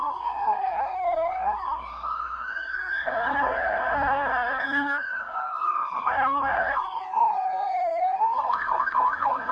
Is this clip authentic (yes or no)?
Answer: no